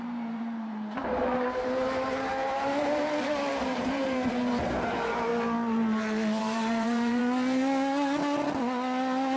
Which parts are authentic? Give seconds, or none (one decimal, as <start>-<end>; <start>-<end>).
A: 5.3-6.4; 7.2-9.4